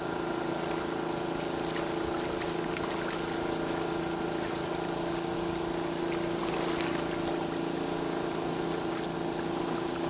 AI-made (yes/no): no